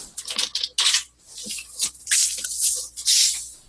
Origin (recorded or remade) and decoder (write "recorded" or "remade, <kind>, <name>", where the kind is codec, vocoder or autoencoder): recorded